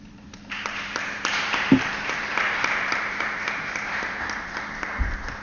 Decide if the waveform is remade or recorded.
remade